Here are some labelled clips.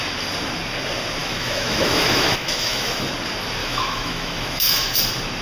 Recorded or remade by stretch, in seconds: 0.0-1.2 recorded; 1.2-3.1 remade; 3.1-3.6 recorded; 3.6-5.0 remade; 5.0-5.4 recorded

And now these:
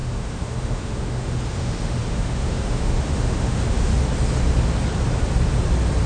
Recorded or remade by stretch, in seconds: 0.0-3.9 remade; 3.9-6.1 recorded

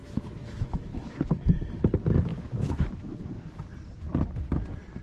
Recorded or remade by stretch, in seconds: 0.0-1.3 remade; 1.3-2.3 recorded; 2.3-3.2 remade; 3.2-5.0 recorded

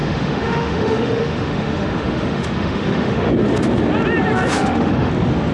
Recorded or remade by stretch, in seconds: 0.0-3.3 remade; 3.3-4.5 recorded; 4.5-5.1 remade; 5.1-5.5 recorded

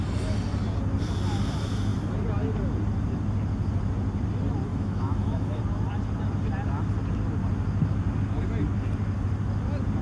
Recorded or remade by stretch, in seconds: 0.0-4.7 recorded; 4.7-5.6 remade; 5.6-10.0 recorded

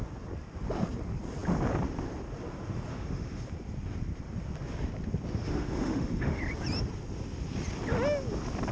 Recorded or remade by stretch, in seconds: 0.0-2.9 recorded; 2.9-3.4 remade; 3.4-5.4 recorded; 5.4-6.4 remade; 6.4-8.7 recorded